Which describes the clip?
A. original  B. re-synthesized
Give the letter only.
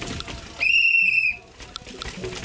A